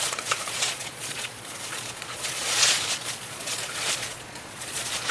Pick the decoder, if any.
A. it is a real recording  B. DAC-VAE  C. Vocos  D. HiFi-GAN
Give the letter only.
C